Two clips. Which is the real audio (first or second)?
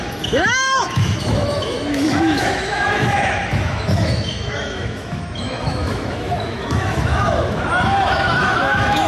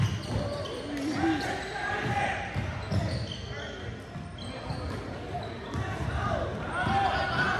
second